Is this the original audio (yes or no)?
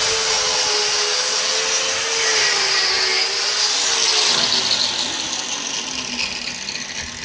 yes